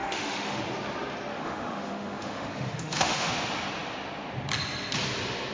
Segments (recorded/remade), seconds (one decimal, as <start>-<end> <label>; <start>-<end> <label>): 0.0-0.6 remade; 0.6-1.3 recorded; 1.3-3.3 remade; 3.3-5.5 recorded